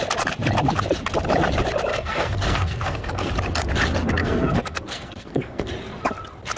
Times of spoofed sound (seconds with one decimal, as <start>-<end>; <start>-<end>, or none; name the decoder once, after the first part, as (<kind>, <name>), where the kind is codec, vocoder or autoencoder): 1.9-3.3 (codec, SNAC); 4.2-5.7